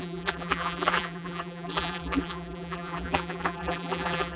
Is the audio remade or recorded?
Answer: remade